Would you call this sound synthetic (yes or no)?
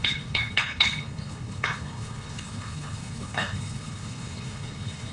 yes